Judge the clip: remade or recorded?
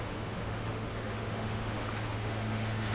remade